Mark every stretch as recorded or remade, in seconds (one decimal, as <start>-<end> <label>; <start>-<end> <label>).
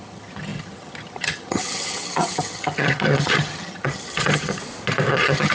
0.0-4.6 remade; 4.6-5.1 recorded; 5.1-5.5 remade